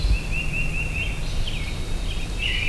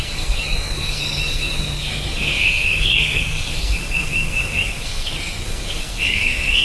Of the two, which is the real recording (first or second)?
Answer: first